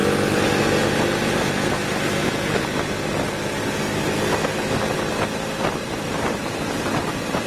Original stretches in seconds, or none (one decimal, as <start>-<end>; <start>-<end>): 0.0-5.8